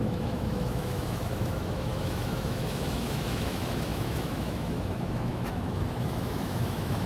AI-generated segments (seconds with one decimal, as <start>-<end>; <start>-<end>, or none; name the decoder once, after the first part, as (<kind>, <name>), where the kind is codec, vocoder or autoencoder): 0.0-7.1 (autoencoder, DAC-VAE)